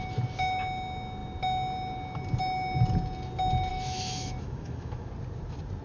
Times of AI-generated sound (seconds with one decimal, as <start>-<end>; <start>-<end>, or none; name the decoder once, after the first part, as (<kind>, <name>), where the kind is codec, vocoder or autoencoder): 3.7-5.1 (autoencoder, DAC-VAE)

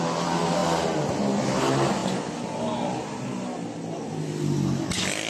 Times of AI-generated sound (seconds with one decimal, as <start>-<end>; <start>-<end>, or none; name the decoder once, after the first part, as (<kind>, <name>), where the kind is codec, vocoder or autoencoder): none

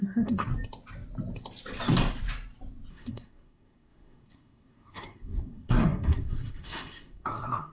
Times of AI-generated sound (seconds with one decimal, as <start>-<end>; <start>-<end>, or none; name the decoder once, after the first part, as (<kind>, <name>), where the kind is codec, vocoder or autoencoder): 0.0-0.5 (codec, SNAC); 2.9-7.7